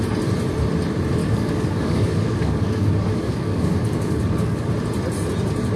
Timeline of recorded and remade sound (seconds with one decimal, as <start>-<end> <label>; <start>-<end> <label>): 0.0-1.2 recorded; 1.2-4.7 remade; 4.7-5.8 recorded

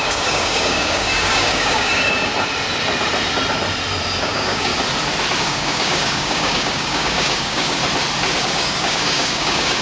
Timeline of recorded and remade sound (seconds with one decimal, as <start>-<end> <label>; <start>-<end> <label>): 0.0-2.3 remade; 2.3-4.2 recorded; 4.2-4.7 remade; 4.7-5.4 recorded; 5.4-7.8 remade; 7.8-8.4 recorded; 8.4-9.8 remade

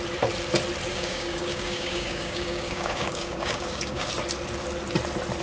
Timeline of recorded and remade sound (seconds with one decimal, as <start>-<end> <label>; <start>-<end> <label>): 0.0-0.9 recorded; 0.9-4.1 remade; 4.1-5.4 recorded

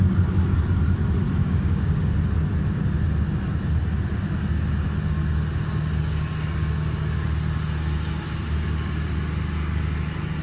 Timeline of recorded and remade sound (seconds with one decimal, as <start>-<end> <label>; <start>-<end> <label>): 0.0-1.4 recorded; 1.4-2.0 remade; 2.0-10.4 recorded

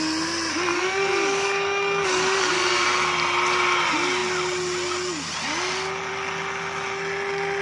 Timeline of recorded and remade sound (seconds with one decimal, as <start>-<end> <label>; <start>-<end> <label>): 0.0-0.7 recorded; 0.7-2.5 remade; 2.5-7.6 recorded